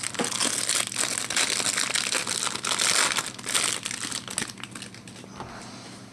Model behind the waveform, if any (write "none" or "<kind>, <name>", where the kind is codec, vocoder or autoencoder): none